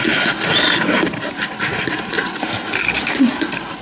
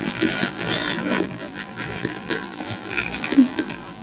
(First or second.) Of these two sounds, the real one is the first